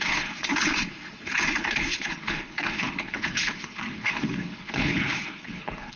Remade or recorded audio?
remade